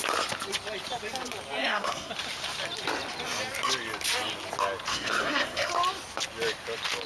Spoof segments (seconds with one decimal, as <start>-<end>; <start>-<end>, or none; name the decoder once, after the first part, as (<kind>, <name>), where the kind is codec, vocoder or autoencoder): 1.6-2.1 (codec, SNAC); 4.9-5.7

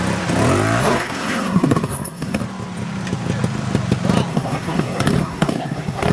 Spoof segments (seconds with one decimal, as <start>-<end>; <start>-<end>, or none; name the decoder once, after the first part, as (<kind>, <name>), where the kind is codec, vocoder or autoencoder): 0.8-2.4 (codec, SNAC); 4.3-6.1